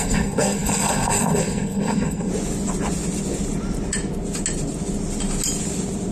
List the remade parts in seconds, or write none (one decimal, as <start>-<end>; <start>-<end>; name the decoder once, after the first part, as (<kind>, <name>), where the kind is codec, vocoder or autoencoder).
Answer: 0.0-2.3 (codec, SNAC)